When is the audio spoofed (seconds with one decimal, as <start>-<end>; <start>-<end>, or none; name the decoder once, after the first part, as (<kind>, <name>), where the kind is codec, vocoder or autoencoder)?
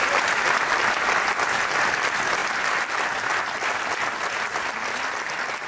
none